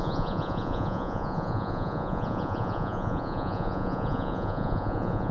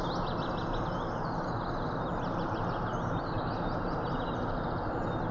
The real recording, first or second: second